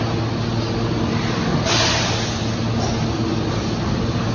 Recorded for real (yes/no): yes